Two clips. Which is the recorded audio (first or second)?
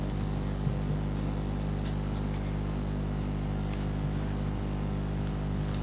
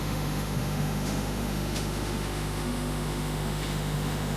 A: first